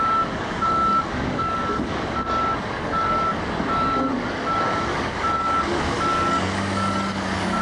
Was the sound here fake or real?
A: fake